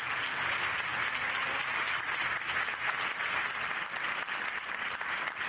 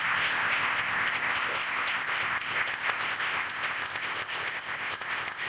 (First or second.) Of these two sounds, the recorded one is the first